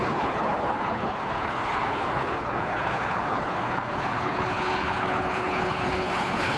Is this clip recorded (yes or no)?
no